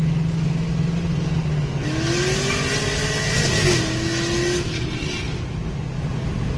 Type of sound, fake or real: real